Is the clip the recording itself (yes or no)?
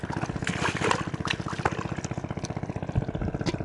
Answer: yes